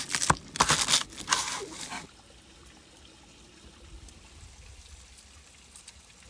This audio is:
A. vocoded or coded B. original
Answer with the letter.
B